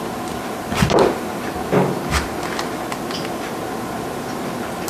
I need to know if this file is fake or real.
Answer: real